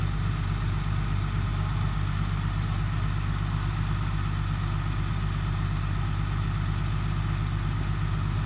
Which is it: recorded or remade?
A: recorded